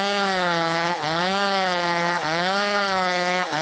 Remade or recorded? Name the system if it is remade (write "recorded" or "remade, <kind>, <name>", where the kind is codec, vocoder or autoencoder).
remade, codec, HILCodec